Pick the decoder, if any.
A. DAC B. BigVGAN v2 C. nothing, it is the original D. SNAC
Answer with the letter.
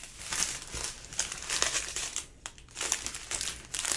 C